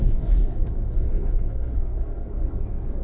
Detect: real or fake fake